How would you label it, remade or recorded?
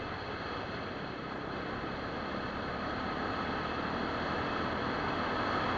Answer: recorded